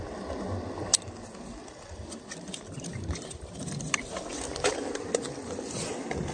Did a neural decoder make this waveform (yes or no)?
no